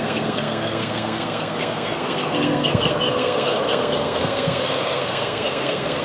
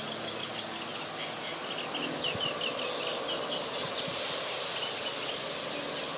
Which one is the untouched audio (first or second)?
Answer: second